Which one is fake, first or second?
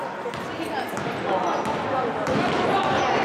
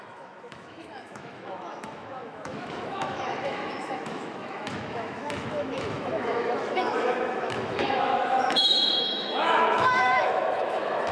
second